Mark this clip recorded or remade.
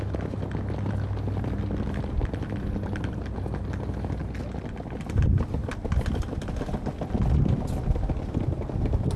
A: recorded